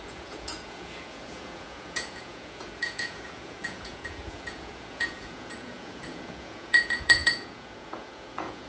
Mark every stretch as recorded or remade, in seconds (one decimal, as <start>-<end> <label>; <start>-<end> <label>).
0.0-8.7 remade